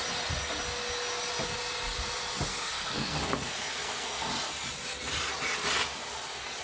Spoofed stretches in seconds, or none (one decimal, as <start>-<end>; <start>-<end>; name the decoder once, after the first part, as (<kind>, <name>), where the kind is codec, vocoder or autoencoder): 2.5-4.3 (codec, SNAC)

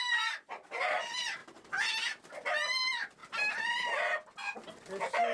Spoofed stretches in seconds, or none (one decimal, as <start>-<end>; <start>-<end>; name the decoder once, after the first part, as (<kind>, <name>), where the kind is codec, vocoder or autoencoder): none

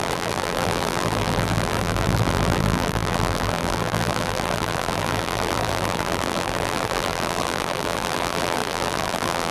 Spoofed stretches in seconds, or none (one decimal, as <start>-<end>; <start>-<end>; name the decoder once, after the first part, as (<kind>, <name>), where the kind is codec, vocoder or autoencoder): 0.0-9.5 (vocoder, BigVGAN v2)

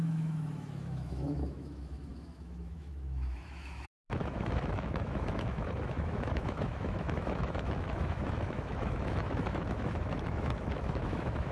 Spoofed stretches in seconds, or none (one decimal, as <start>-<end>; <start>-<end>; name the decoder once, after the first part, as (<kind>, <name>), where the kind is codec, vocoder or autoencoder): 0.0-11.5 (autoencoder, DAC-VAE)

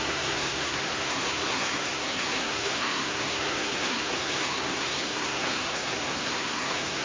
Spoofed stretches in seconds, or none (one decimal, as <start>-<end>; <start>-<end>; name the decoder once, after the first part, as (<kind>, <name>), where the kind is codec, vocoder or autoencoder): 0.0-7.0 (codec, SNAC)